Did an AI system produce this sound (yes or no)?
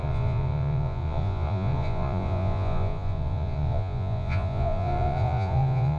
yes